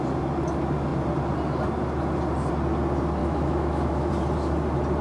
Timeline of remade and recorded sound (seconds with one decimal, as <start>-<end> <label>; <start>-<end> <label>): 0.0-3.2 recorded; 3.2-4.1 remade; 4.1-5.0 recorded